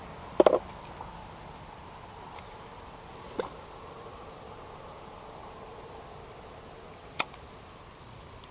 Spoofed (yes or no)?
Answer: no